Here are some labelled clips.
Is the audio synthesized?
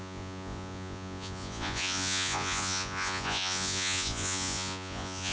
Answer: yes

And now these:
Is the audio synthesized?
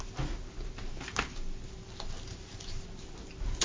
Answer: no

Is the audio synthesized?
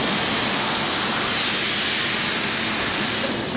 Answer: no